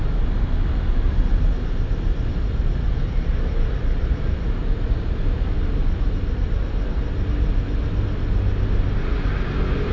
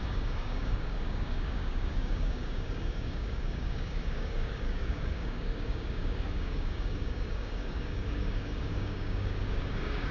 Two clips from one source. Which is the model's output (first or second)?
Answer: second